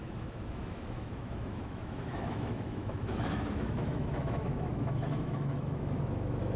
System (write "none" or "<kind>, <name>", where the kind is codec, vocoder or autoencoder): autoencoder, DAC-VAE